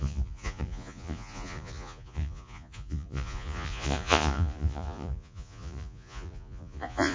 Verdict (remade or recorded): remade